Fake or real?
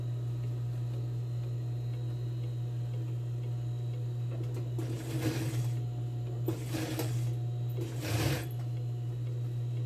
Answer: real